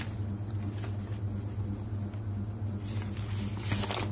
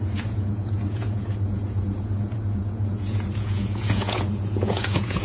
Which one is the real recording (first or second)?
first